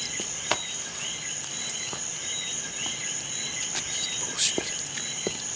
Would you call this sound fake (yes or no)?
no